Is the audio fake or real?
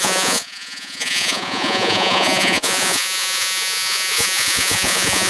fake